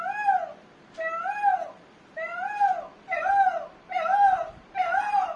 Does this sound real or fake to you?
fake